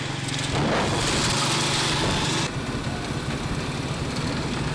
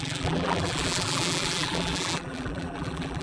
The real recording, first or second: first